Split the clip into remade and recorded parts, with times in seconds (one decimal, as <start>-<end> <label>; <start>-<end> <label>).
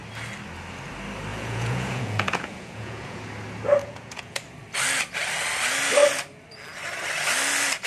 0.0-1.3 recorded; 1.3-3.2 remade; 3.2-3.8 recorded; 3.8-4.4 remade; 4.4-7.9 recorded